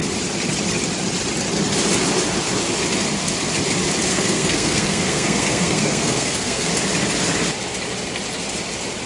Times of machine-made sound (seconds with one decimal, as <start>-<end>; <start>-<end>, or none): 4.1-6.7